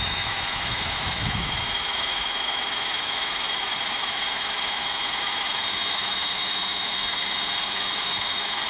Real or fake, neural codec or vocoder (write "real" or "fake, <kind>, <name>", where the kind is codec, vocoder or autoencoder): fake, autoencoder, DAC-VAE